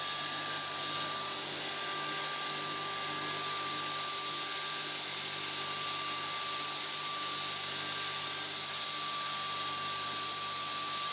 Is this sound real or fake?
real